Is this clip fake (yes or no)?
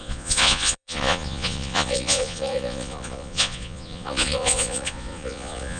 yes